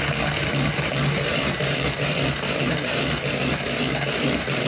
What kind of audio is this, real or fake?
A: fake